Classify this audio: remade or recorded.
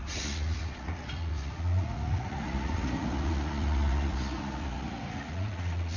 remade